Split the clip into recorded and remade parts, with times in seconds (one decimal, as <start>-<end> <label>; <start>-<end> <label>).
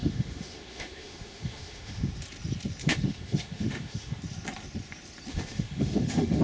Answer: 0.0-2.1 remade; 2.1-2.8 recorded; 2.8-4.2 remade; 4.2-5.3 recorded; 5.3-6.4 remade